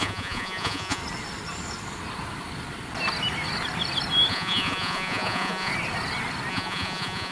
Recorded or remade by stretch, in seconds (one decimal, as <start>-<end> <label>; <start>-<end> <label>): 0.0-1.0 remade; 1.0-4.3 recorded; 4.3-5.7 remade; 5.7-6.5 recorded; 6.5-7.3 remade

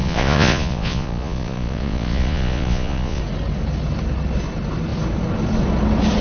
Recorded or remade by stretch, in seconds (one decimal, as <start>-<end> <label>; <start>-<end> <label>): 0.0-3.2 remade; 3.2-6.2 recorded

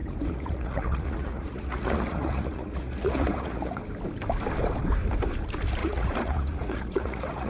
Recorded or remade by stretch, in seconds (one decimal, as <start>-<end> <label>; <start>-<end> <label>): 0.0-3.8 remade; 3.8-5.8 recorded; 5.8-7.5 remade

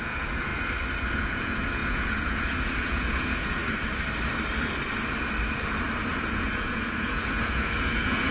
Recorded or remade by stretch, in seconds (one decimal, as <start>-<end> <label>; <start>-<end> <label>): 0.0-0.5 remade; 0.5-1.1 recorded; 1.1-3.6 remade; 3.6-6.1 recorded; 6.1-8.3 remade

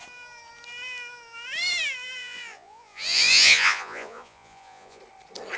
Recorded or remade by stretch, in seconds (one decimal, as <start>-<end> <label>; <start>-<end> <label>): 0.0-2.2 recorded; 2.2-5.0 remade; 5.0-5.6 recorded

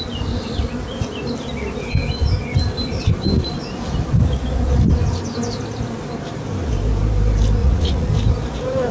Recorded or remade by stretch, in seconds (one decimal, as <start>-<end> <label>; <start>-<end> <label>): 0.0-7.6 recorded; 7.6-8.1 remade; 8.1-8.9 recorded